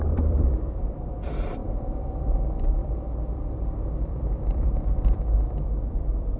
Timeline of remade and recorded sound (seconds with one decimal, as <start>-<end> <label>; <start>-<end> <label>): 0.0-6.4 remade